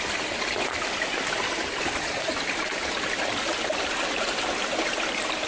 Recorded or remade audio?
recorded